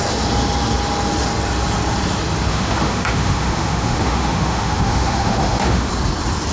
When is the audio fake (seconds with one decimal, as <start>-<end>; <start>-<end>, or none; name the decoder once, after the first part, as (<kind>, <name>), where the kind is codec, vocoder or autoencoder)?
2.5-5.9 (autoencoder, DAC-VAE)